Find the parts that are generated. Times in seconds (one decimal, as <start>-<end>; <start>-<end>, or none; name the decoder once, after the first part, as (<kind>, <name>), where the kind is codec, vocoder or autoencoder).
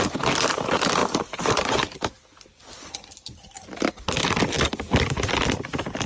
none